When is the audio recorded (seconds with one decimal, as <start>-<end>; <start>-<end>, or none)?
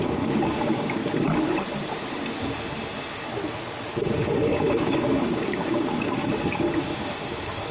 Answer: 1.0-4.0